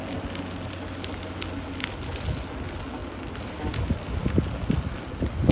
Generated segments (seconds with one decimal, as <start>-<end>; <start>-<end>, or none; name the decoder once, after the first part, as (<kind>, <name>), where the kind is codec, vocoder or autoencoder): none